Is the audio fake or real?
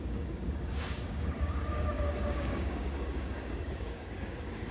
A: fake